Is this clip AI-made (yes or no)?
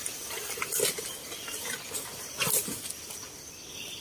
no